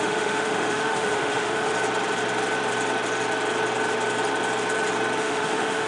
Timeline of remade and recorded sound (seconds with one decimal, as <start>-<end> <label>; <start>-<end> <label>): 0.0-1.7 remade; 1.7-5.2 recorded; 5.2-5.9 remade